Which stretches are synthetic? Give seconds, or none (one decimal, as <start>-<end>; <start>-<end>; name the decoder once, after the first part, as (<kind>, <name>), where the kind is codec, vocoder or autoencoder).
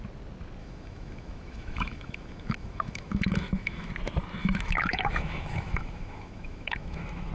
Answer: 0.6-3.9 (autoencoder, DAC-VAE); 4.4-7.3